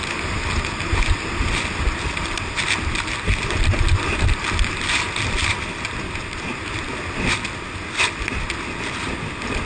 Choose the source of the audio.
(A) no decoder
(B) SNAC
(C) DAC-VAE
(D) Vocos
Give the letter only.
A